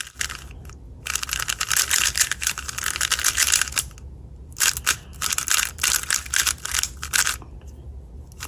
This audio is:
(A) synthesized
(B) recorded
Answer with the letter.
B